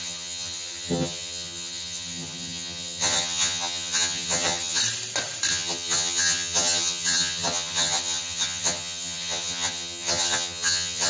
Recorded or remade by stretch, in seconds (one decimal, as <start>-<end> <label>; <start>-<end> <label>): 0.0-4.8 remade; 4.8-5.5 recorded; 5.5-11.1 remade